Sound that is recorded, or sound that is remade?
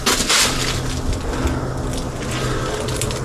recorded